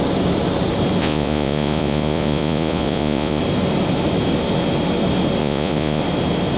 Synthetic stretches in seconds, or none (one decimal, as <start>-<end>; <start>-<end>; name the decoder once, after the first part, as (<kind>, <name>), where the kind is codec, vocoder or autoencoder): 1.0-3.4 (vocoder, Vocos); 5.4-6.0